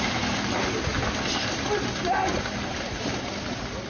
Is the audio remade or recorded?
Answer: recorded